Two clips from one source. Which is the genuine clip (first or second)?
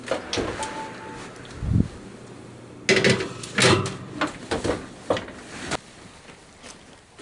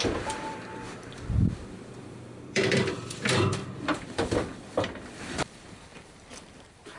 first